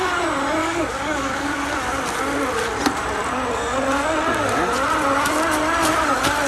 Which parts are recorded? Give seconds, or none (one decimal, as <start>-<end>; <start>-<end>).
0.0-0.6; 1.6-6.5